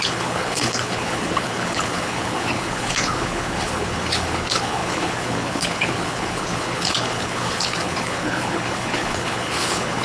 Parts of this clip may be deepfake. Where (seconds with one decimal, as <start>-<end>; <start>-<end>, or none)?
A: 0.0-10.0

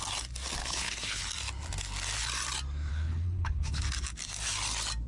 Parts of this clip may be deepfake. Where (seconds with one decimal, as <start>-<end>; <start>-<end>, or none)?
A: 0.6-1.2; 2.9-3.8

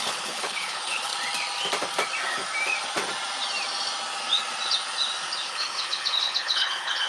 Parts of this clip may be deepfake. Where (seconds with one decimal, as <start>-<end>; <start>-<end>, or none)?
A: 0.0-1.1; 5.4-7.1

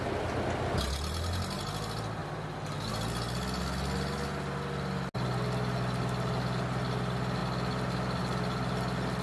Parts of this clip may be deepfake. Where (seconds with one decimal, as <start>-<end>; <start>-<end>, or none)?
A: none

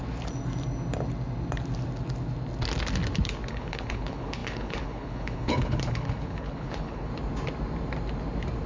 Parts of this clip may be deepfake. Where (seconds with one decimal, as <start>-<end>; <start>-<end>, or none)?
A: 3.5-7.1

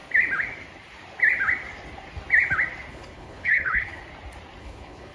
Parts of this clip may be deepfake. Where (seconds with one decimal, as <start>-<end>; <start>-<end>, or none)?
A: 2.9-4.0; 4.6-5.1

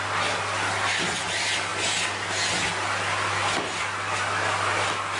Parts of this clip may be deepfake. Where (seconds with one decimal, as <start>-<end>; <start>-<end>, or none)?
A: none